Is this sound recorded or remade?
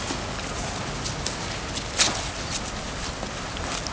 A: recorded